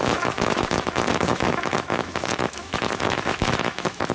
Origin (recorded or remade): remade